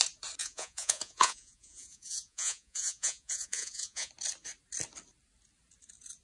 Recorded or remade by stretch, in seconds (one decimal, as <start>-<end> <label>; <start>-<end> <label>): 0.0-0.4 recorded; 0.4-4.1 remade; 4.1-6.2 recorded